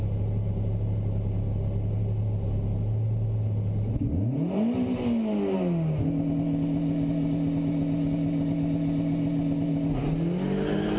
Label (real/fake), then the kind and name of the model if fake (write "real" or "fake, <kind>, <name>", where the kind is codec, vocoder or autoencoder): real